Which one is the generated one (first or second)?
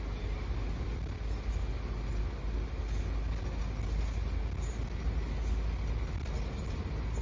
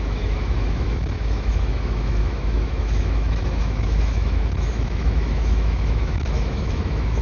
second